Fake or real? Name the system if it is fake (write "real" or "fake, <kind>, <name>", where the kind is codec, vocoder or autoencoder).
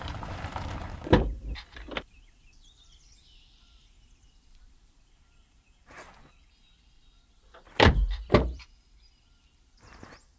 fake, vocoder, BigVGAN v2